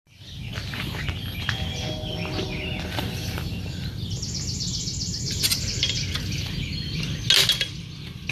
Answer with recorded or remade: recorded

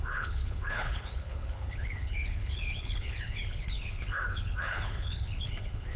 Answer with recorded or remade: remade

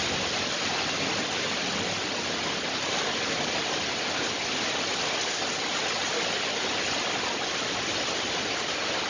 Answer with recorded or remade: recorded